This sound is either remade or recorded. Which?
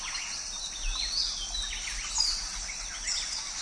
recorded